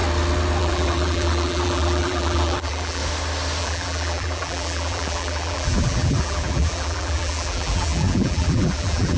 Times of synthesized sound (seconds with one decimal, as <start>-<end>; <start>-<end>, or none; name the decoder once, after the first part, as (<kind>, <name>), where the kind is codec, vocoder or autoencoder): 0.6-3.0 (vocoder, BigVGAN v2); 3.6-9.2